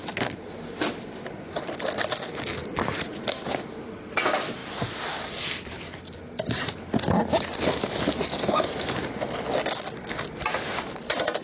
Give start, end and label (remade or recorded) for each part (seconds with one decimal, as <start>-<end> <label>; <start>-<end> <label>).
0.0-11.4 recorded

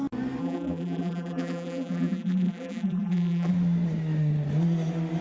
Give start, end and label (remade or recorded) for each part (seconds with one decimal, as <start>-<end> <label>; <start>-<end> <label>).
0.0-0.4 recorded; 0.4-3.5 remade; 3.5-5.2 recorded

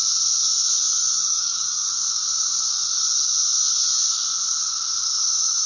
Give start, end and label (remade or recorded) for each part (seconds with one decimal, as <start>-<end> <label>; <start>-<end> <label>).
0.0-1.1 recorded; 1.1-2.0 remade; 2.0-5.7 recorded

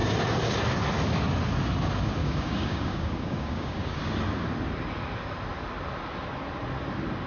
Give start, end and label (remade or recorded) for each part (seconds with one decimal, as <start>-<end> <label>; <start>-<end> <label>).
0.0-2.2 recorded; 2.2-4.0 remade; 4.0-7.3 recorded

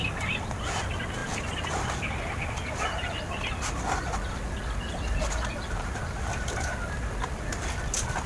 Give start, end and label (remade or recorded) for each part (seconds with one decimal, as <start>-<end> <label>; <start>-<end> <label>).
0.0-8.3 recorded

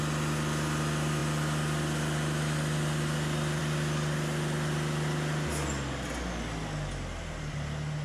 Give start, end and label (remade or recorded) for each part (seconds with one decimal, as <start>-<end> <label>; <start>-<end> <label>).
0.0-8.0 recorded

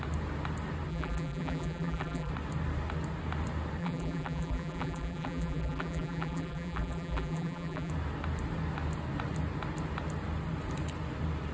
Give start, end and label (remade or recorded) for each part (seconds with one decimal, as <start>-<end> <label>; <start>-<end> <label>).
0.0-0.9 recorded; 0.9-2.3 remade; 2.3-3.8 recorded; 3.8-7.9 remade; 7.9-11.5 recorded

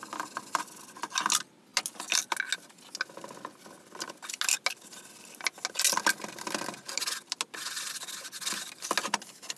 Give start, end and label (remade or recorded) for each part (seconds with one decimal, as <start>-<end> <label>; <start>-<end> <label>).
0.0-9.6 recorded